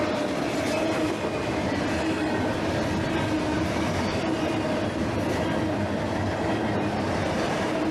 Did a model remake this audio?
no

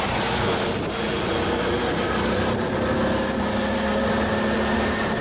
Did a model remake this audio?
no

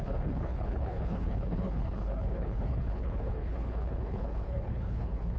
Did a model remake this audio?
yes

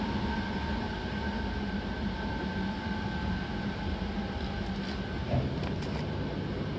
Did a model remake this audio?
no